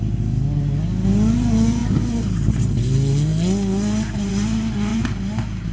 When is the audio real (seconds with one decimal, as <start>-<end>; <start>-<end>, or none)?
0.0-1.8; 2.7-4.9